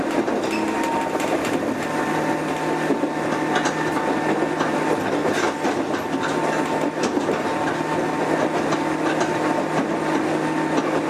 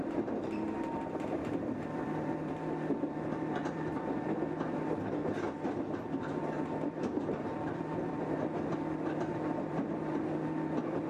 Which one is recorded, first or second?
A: first